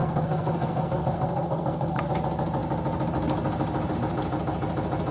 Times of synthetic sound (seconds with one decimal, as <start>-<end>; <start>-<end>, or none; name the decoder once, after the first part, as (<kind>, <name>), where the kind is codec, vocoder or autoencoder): 0.0-2.1 (codec, SNAC)